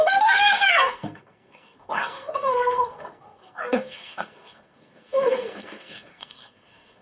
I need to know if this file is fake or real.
fake